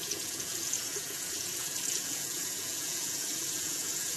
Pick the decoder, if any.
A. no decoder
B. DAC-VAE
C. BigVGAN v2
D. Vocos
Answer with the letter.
D